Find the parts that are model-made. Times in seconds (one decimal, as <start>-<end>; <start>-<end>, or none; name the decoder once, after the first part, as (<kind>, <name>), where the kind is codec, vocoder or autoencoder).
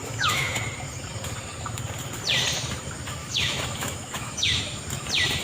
0.0-0.6 (autoencoder, DAC-VAE); 3.2-4.6